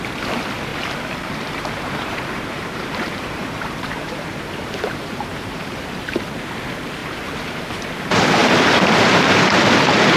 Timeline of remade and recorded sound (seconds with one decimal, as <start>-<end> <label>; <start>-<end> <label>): 0.0-0.7 recorded; 0.7-5.8 remade; 5.8-7.0 recorded; 7.0-7.6 remade; 7.6-8.4 recorded; 8.4-9.5 remade; 9.5-10.2 recorded

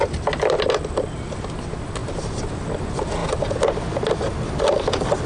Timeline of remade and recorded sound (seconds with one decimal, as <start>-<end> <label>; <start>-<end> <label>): 0.0-5.3 recorded

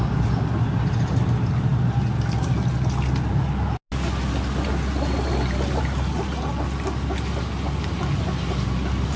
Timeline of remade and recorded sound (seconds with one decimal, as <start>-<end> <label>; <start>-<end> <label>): 0.0-9.2 recorded

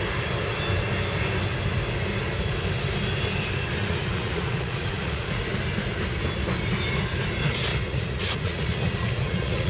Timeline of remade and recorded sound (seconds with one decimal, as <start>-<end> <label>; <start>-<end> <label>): 0.0-3.8 recorded; 3.8-5.4 remade; 5.4-7.7 recorded; 7.7-9.7 remade